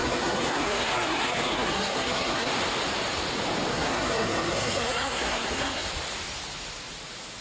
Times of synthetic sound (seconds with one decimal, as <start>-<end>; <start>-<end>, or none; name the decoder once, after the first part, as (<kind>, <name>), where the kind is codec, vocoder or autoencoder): 0.0-2.5 (codec, SNAC); 3.7-5.9